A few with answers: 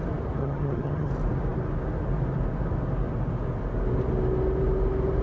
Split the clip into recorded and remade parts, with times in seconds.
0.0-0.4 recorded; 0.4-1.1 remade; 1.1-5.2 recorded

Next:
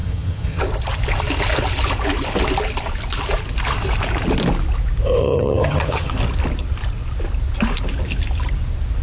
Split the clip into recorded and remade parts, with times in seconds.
0.0-0.6 remade; 0.6-5.2 recorded; 5.2-6.1 remade; 6.1-9.0 recorded

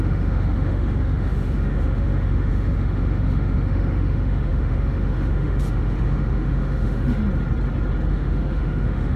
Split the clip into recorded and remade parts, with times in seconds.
0.0-7.2 remade; 7.2-8.1 recorded; 8.1-9.2 remade

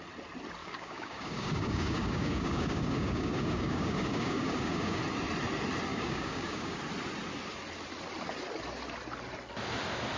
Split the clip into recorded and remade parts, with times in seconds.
0.0-0.6 recorded; 0.6-5.0 remade; 5.0-5.9 recorded; 5.9-6.8 remade; 6.8-10.2 recorded

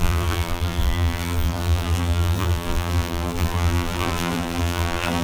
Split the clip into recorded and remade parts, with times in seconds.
0.0-5.2 remade

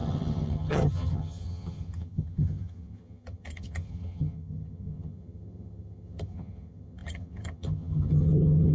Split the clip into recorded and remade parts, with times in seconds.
0.0-8.7 remade